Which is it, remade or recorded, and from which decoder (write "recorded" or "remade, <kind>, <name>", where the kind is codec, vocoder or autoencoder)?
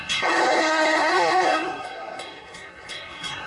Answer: remade, codec, SNAC